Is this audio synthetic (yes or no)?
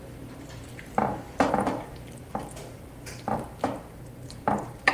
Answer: yes